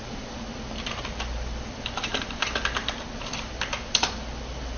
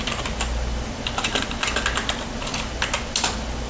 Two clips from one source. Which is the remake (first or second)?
first